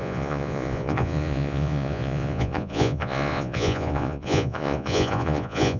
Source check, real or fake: fake